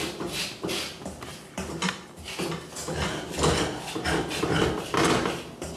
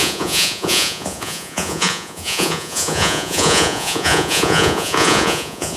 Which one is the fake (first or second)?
second